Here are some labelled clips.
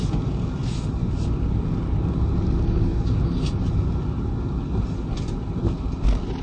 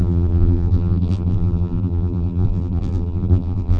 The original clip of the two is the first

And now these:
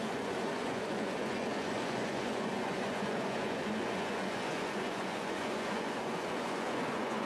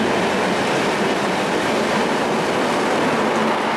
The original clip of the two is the second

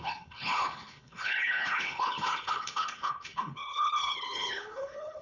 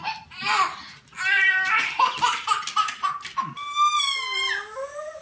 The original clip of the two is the second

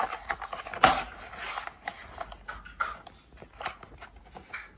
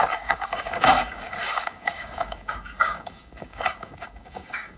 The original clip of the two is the first